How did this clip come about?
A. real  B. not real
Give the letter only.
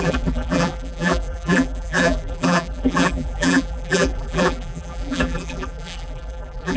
B